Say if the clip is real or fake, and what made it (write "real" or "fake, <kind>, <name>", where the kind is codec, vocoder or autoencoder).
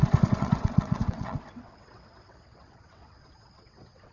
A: fake, vocoder, WaveNeXt